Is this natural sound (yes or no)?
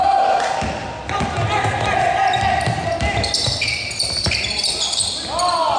yes